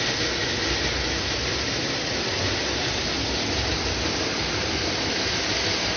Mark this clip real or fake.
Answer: real